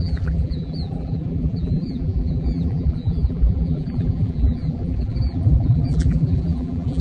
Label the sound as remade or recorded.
remade